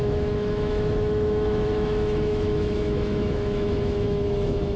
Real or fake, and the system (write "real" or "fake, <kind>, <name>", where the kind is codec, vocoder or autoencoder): fake, autoencoder, DAC-VAE